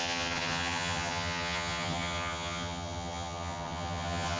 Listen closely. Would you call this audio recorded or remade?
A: remade